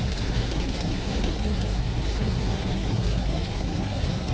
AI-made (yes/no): yes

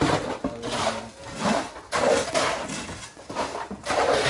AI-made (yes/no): no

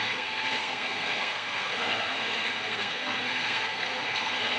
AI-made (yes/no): yes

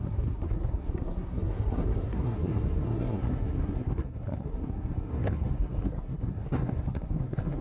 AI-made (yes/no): yes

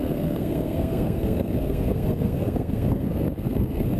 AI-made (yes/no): yes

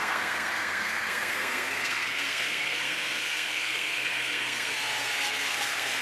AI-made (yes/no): yes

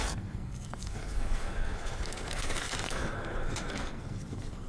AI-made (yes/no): yes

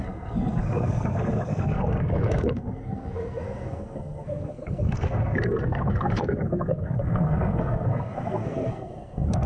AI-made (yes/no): yes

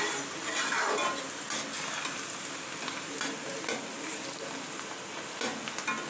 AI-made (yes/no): no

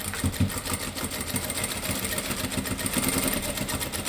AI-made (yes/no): no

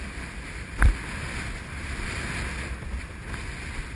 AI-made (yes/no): no